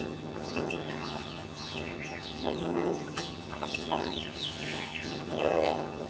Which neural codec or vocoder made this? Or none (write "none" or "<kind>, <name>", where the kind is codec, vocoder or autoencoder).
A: vocoder, HiFi-GAN